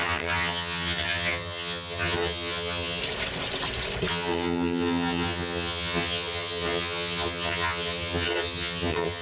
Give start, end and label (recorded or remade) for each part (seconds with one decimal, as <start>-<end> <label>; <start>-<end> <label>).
0.0-3.0 remade; 3.0-4.1 recorded; 4.1-9.2 remade